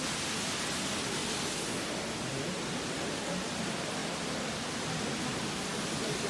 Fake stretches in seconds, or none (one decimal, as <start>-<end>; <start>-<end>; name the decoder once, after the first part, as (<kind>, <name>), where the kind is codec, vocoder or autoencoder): 4.0-5.1 (vocoder, BigVGAN v2)